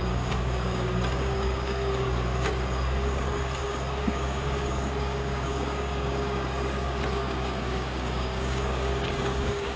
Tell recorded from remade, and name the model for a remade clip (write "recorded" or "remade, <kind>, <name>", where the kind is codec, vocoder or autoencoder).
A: remade, codec, DAC